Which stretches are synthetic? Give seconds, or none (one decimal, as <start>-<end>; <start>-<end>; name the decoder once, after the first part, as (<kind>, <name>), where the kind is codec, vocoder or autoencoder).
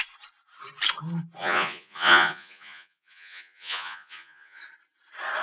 1.4-4.6 (vocoder, Vocos)